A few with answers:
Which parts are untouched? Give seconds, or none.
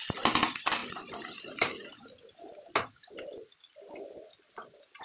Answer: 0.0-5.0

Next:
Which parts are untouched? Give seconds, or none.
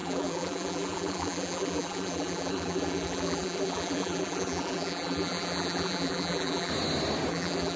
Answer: 6.7-7.3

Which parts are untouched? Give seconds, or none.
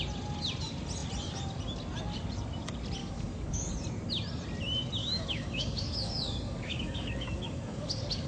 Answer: 0.0-3.0; 3.7-5.0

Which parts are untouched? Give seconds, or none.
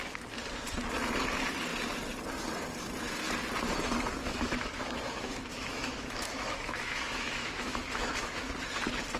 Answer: 0.0-4.2; 8.5-9.2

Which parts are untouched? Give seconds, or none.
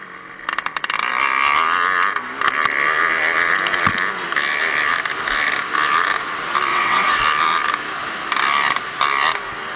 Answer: 0.0-6.7; 7.2-9.8